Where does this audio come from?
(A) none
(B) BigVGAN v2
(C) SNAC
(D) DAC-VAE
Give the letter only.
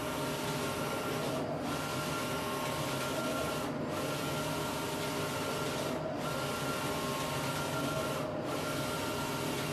A